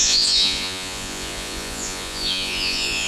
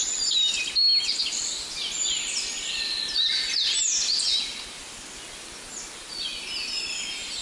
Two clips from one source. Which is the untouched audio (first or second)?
second